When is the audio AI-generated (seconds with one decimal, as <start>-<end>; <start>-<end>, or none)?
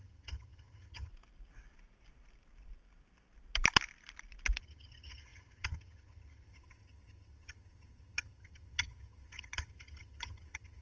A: 0.0-1.1; 4.6-10.8